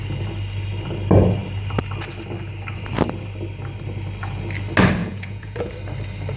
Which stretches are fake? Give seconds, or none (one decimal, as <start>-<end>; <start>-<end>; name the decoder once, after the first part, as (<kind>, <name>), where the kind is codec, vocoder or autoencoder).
5.0-5.7 (vocoder, Vocos)